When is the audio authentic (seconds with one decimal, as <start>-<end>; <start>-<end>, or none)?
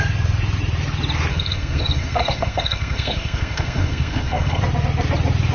0.0-1.3; 4.6-5.5